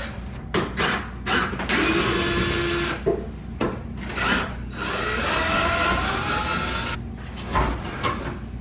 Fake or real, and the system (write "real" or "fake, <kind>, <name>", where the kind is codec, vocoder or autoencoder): real